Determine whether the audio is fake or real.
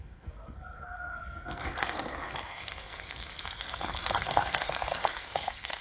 fake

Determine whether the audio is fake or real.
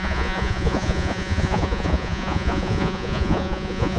fake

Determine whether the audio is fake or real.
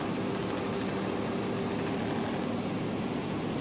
real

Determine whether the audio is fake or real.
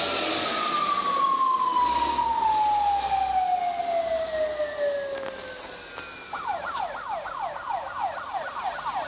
real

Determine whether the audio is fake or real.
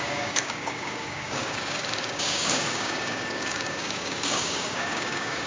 fake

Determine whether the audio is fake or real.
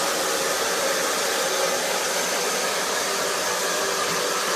real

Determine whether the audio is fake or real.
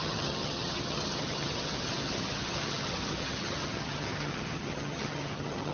fake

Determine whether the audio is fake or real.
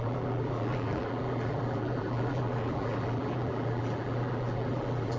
fake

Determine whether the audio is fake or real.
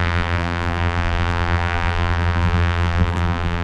fake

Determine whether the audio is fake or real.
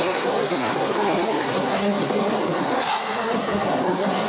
fake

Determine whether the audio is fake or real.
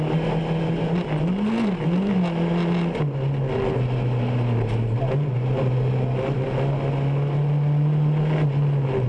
real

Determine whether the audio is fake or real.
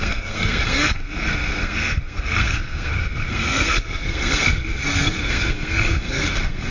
fake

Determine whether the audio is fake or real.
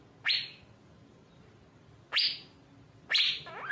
real